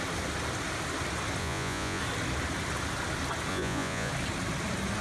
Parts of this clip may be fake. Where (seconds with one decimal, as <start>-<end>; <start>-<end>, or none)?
1.4-2.0; 3.5-4.1